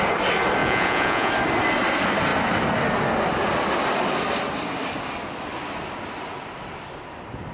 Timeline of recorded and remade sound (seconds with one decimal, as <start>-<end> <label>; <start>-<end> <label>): 0.0-0.6 recorded; 0.6-1.3 remade; 1.3-7.5 recorded